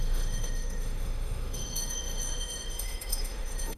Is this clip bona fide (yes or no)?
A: no